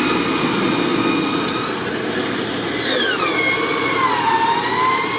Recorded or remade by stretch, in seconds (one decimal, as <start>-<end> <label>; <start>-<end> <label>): 0.0-5.2 recorded